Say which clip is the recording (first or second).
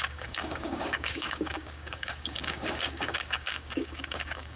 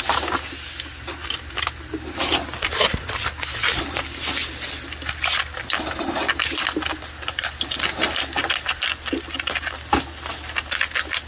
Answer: second